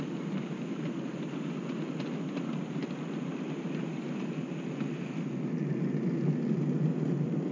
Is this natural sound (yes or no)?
yes